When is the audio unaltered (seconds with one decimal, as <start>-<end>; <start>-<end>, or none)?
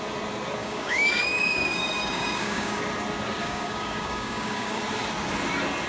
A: 0.0-0.6; 2.8-3.4; 4.8-5.9